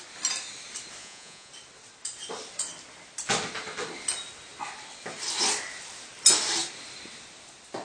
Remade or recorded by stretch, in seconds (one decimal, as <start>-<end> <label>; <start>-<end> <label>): 0.0-1.0 recorded; 1.0-1.5 remade; 1.5-7.8 recorded